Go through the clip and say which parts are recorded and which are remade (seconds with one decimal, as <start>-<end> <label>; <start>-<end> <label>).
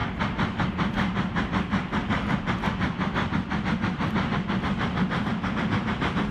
0.0-0.6 recorded; 0.6-2.0 remade; 2.0-5.7 recorded; 5.7-6.3 remade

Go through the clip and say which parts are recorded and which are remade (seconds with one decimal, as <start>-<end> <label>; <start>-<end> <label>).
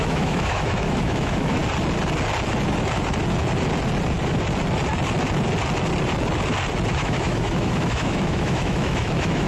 0.0-1.6 remade; 1.6-6.9 recorded; 6.9-9.5 remade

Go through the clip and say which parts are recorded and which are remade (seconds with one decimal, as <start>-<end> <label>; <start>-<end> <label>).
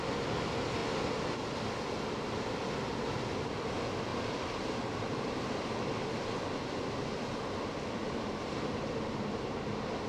0.0-4.1 recorded; 4.1-6.1 remade; 6.1-8.0 recorded; 8.0-9.6 remade; 9.6-10.1 recorded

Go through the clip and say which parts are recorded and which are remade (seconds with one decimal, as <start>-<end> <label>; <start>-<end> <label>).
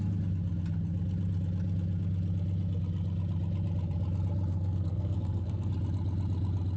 0.0-4.5 recorded; 4.5-5.7 remade; 5.7-6.8 recorded